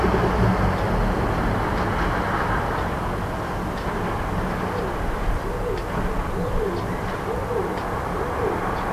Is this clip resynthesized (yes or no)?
no